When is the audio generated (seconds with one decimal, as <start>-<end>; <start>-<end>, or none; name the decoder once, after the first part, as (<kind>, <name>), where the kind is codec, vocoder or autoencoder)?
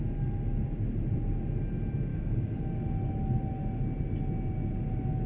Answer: 2.1-2.6 (codec, DAC)